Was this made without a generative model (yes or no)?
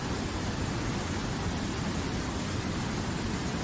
yes